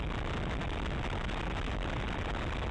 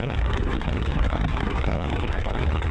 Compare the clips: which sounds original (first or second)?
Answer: first